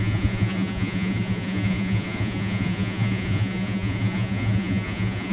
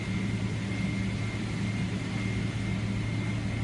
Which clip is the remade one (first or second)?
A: first